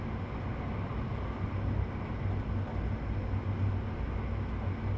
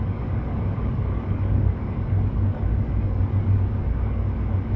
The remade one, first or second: second